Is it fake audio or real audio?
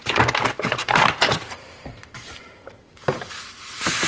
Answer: fake